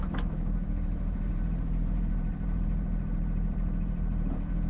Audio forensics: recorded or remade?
remade